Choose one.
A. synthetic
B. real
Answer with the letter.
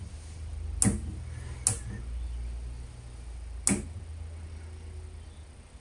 B